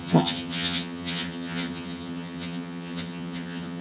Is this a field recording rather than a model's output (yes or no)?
no